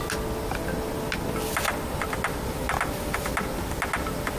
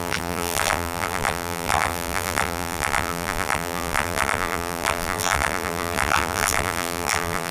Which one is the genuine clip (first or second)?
first